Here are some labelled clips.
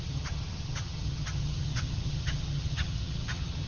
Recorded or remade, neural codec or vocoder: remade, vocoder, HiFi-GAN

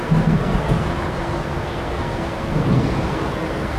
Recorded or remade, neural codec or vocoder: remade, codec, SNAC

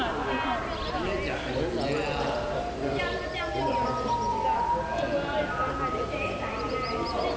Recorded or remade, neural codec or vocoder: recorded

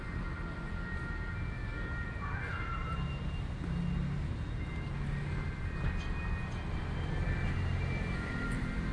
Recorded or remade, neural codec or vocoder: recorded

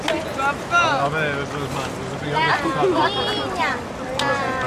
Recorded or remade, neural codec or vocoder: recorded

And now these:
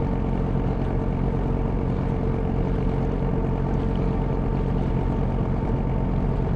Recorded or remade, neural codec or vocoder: recorded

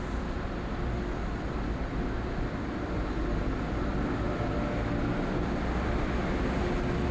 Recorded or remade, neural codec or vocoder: recorded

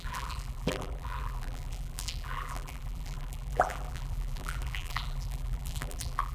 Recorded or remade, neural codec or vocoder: remade, vocoder, BigVGAN v2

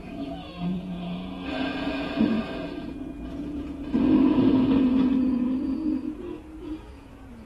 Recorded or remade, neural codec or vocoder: remade, vocoder, Vocos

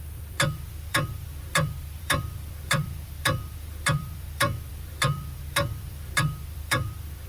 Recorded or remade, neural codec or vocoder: remade, vocoder, BigVGAN v2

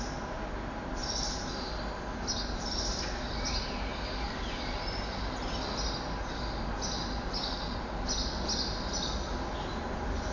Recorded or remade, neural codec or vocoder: recorded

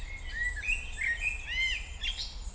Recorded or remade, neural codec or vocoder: recorded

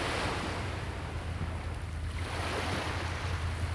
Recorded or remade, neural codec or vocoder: recorded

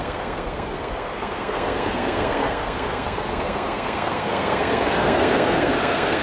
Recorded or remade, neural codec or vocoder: remade, codec, SNAC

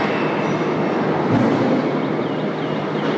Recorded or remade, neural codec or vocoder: recorded